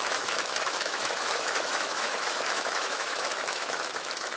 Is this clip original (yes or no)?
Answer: no